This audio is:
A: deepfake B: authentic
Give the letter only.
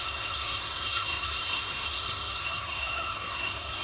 A